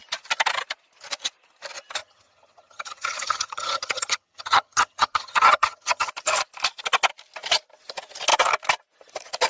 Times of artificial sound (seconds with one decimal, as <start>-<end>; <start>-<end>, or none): 2.0-6.1